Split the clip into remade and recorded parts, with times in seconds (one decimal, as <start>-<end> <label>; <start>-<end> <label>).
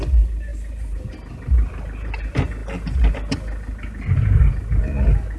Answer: 0.0-5.4 recorded